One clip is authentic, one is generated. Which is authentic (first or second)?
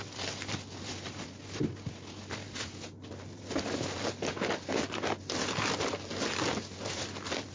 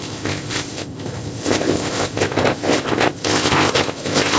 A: first